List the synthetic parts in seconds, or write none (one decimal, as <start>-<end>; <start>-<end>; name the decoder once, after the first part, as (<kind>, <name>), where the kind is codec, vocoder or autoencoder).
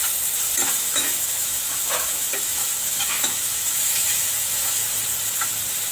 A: 0.8-4.8 (autoencoder, DAC-VAE)